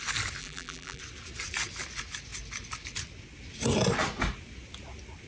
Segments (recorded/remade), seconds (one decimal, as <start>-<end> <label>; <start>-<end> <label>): 0.0-0.4 recorded; 0.4-1.0 remade; 1.0-5.3 recorded

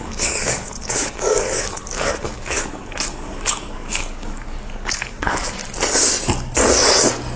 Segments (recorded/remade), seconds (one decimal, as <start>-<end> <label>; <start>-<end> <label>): 0.0-5.6 remade; 5.6-7.4 recorded

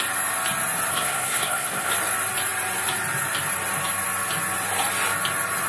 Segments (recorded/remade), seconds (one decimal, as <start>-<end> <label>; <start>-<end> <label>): 0.0-0.9 recorded; 0.9-1.9 remade; 1.9-5.7 recorded

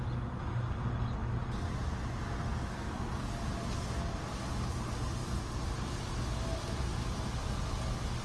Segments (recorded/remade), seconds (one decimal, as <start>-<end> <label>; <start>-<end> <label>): 0.0-2.7 recorded; 2.7-3.3 remade; 3.3-8.2 recorded

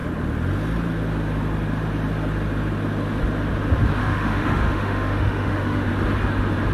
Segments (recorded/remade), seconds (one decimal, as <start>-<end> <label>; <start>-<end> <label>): 0.0-4.0 recorded; 4.0-5.9 remade; 5.9-6.7 recorded

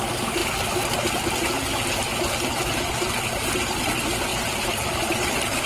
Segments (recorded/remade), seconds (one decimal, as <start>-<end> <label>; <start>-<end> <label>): 0.0-5.7 recorded

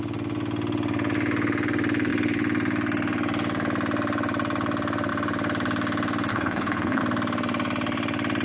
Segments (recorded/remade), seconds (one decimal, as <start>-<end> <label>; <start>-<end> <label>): 0.0-6.3 recorded; 6.3-7.0 remade; 7.0-8.4 recorded

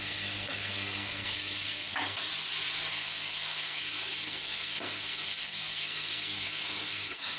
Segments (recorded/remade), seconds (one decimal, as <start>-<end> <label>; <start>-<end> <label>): 0.0-2.3 remade; 2.3-2.9 recorded; 2.9-7.4 remade